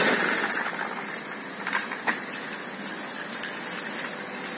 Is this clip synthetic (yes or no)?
no